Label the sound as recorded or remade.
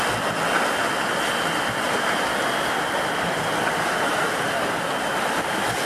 recorded